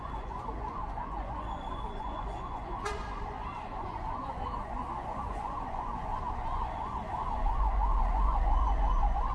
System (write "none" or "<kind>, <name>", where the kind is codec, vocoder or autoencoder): vocoder, Vocos